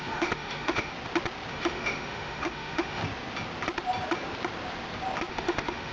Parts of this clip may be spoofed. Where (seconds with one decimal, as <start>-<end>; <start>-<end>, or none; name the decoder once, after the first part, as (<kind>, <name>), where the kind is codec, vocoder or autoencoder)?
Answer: 0.0-0.9 (autoencoder, DAC-VAE); 1.5-3.0; 5.3-5.9